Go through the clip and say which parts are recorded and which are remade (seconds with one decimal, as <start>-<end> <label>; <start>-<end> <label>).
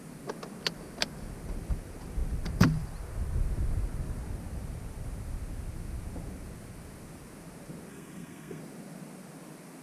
0.0-7.9 recorded; 7.9-8.6 remade; 8.6-9.8 recorded